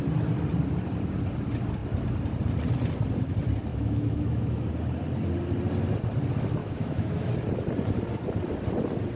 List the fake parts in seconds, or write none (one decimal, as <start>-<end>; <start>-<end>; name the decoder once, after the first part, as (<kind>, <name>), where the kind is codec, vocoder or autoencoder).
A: 3.7-4.6 (autoencoder, DAC-VAE); 6.6-7.3